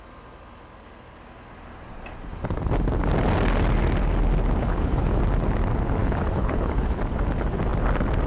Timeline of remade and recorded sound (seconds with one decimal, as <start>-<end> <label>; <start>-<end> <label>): 0.0-4.6 recorded; 4.6-5.2 remade; 5.2-6.0 recorded; 6.0-7.0 remade; 7.0-8.3 recorded